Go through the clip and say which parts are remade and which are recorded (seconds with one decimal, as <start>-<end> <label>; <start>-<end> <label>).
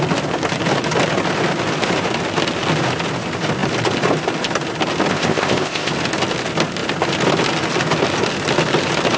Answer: 0.0-5.1 recorded; 5.1-5.9 remade; 5.9-9.2 recorded